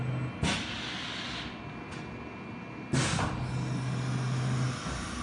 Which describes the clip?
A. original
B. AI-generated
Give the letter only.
A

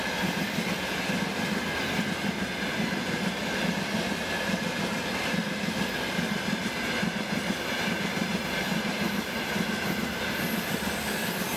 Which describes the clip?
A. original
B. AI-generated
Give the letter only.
A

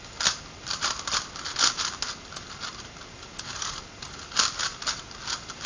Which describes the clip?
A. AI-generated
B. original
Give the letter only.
B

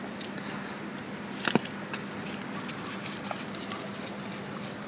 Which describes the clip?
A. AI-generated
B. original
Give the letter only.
B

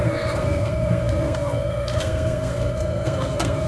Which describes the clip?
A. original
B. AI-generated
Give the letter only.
B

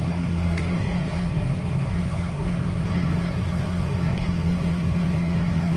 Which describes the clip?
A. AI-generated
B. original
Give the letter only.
A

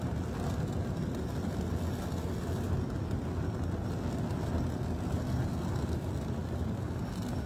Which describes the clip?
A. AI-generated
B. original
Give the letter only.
B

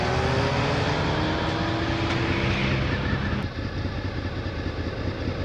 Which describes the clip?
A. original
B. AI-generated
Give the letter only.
A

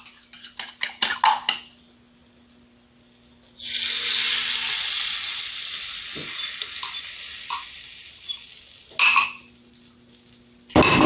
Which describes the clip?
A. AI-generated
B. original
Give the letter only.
B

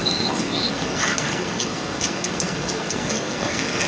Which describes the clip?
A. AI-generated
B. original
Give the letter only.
A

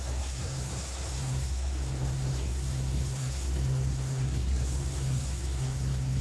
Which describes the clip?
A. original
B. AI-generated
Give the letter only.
B